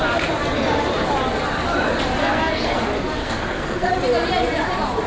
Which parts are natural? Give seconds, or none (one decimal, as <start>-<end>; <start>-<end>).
0.0-2.2; 2.8-3.2; 4.0-5.1